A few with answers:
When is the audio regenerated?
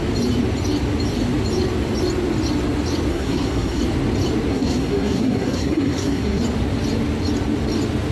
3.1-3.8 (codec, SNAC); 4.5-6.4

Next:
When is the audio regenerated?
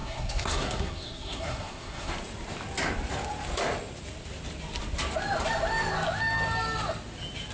0.0-2.1 (codec, SNAC)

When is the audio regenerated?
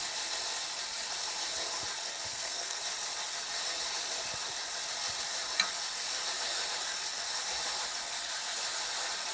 2.3-2.8 (codec, SNAC)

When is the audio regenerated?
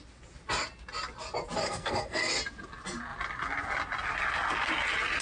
1.6-2.3 (codec, SNAC)